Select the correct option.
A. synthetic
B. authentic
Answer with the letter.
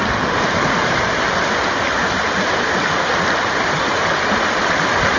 B